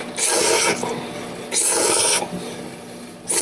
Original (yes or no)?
yes